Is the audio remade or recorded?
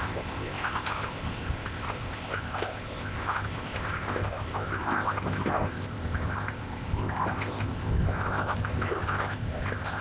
remade